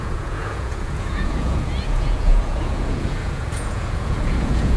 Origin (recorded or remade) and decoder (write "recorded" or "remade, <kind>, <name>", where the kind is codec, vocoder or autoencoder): remade, vocoder, Vocos